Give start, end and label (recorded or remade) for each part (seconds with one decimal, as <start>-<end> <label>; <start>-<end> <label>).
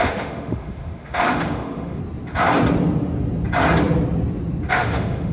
0.0-2.0 remade; 2.0-4.7 recorded; 4.7-5.3 remade